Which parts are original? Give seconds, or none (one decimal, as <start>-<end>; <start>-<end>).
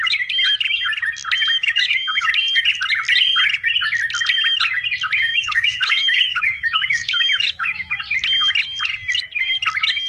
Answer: 0.0-1.6; 2.3-5.3; 8.0-10.1